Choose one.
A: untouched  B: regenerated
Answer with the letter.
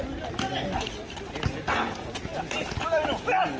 A